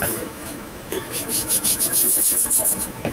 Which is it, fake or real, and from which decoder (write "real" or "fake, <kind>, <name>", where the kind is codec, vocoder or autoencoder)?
fake, autoencoder, DAC-VAE